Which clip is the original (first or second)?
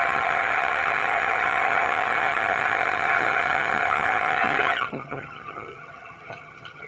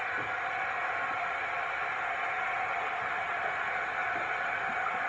second